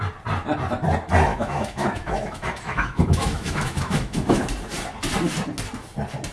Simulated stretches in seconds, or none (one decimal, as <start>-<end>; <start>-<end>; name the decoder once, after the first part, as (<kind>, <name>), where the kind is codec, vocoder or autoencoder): 1.3-4.4 (autoencoder, DAC-VAE)